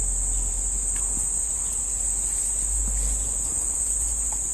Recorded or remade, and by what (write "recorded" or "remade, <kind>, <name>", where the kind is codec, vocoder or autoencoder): recorded